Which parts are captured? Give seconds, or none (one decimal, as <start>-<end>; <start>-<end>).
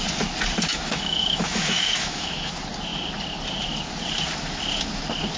0.0-0.7; 2.5-5.4